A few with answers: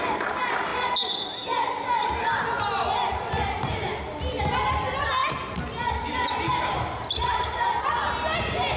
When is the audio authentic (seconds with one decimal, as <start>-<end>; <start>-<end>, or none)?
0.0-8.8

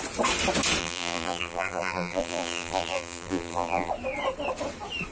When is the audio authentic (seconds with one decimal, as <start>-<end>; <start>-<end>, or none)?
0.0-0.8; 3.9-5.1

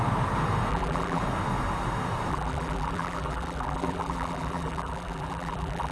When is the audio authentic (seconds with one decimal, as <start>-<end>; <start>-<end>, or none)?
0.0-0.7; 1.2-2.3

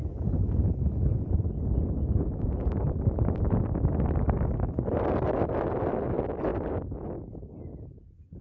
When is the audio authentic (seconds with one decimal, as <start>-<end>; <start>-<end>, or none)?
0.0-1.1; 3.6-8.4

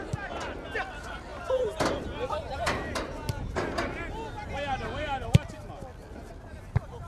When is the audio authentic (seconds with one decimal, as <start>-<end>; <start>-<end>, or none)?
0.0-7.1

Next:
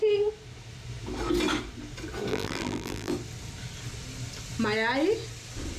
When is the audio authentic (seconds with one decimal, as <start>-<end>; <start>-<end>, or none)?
0.0-2.3; 3.1-5.8

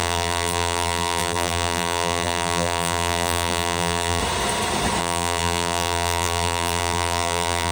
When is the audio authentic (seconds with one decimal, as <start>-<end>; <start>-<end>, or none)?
4.2-5.0